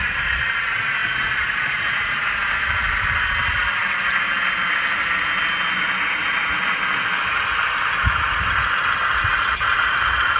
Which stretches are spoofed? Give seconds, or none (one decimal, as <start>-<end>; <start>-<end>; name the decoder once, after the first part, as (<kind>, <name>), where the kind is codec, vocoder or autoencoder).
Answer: 0.0-3.8 (vocoder, BigVGAN v2); 9.0-10.4

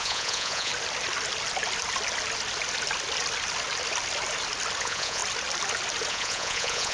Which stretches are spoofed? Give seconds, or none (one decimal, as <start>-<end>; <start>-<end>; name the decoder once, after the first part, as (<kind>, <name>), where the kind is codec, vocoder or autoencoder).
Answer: 0.0-0.7 (vocoder, Vocos); 4.8-5.2; 6.1-6.9

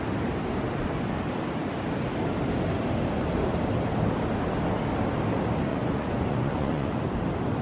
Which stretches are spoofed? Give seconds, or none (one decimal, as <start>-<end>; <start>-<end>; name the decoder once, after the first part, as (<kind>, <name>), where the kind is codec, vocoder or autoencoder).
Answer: 5.7-7.0 (vocoder, Vocos)

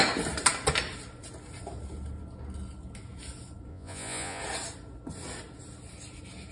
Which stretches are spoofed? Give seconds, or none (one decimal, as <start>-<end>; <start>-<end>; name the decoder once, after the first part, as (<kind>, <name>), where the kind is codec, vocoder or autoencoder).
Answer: 3.7-4.4 (vocoder, Vocos)

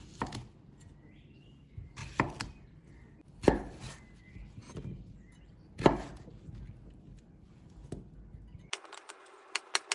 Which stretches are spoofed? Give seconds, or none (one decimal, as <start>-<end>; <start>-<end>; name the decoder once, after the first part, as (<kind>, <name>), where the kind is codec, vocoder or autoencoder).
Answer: none

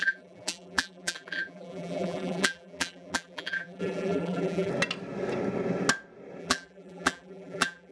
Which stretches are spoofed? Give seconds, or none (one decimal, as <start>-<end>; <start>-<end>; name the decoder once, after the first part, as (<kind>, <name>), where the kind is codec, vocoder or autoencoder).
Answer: 0.0-4.7 (vocoder, BigVGAN v2); 6.4-7.9